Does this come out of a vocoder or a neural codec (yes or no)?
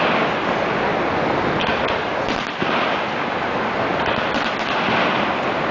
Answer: no